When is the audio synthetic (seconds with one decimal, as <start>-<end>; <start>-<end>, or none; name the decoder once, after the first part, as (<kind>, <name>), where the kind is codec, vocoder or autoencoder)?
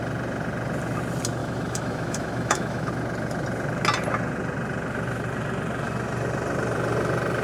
1.4-2.9 (autoencoder, DAC-VAE)